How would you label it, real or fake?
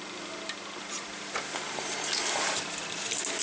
real